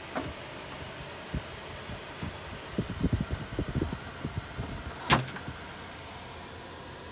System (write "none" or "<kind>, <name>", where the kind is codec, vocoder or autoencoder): none